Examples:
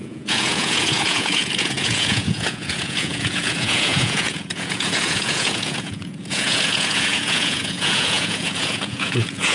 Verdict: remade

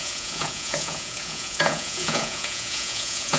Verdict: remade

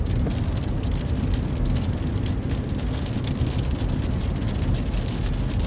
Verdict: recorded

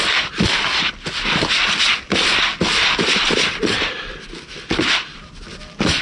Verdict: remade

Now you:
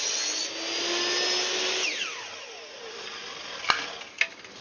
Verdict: recorded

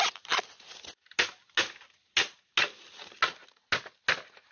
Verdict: recorded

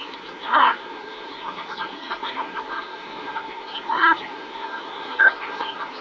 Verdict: remade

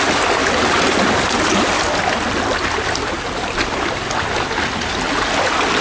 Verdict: recorded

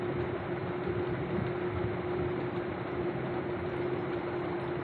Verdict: recorded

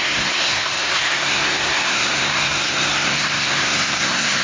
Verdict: remade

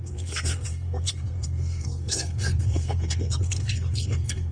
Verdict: remade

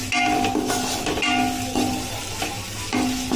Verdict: recorded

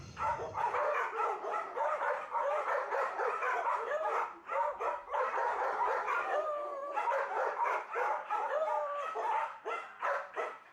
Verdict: remade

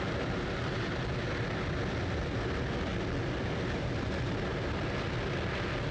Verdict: recorded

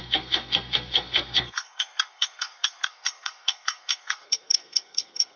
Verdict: remade